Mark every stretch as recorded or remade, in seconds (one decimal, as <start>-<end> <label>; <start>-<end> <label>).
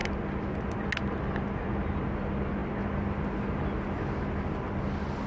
0.0-5.3 recorded